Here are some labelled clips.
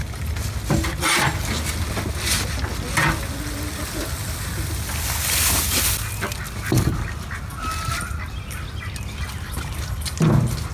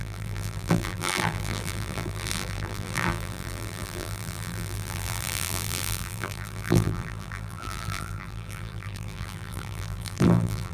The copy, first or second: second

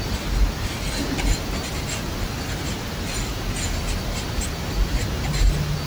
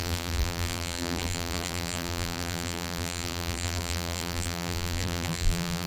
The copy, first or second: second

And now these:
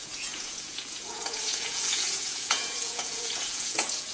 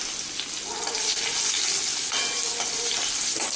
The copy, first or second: first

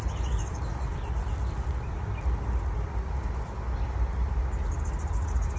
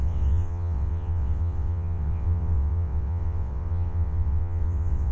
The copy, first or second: second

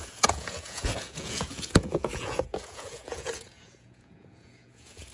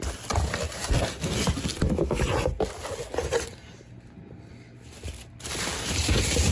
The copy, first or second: first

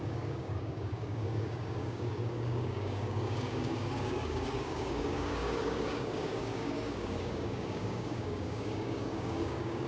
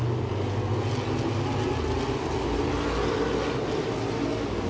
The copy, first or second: first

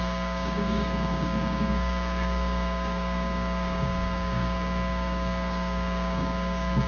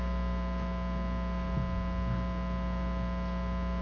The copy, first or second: first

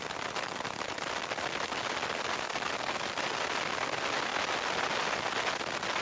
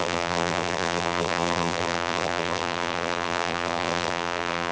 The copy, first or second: second